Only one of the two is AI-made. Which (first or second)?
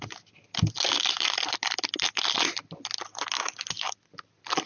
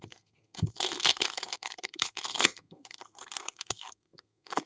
second